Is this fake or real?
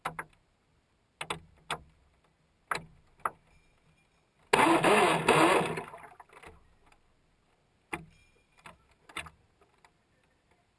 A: real